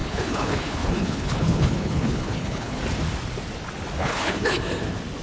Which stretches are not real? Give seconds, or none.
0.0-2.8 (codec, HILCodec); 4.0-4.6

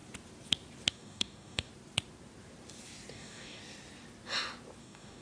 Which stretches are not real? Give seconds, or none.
0.9-1.7 (codec, DAC); 3.1-3.6; 4.8-5.2

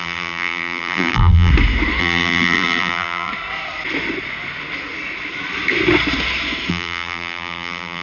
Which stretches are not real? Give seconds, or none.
0.0-1.5 (vocoder, BigVGAN v2); 2.0-3.3; 6.7-8.0

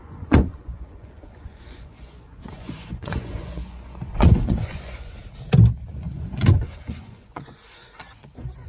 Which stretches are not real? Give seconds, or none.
0.0-5.2 (vocoder, Vocos); 5.9-8.7